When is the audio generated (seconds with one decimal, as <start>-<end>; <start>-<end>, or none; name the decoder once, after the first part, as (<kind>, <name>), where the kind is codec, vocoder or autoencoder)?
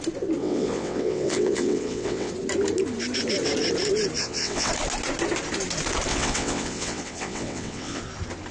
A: 0.4-2.3 (vocoder, WaveNeXt); 4.2-4.7; 6.1-8.0